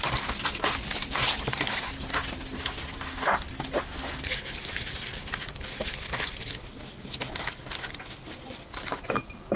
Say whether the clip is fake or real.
real